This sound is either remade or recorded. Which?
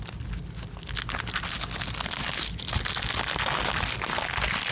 recorded